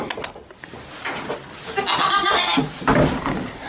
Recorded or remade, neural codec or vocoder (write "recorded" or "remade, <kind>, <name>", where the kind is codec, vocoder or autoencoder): recorded